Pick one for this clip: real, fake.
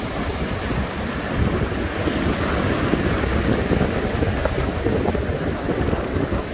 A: real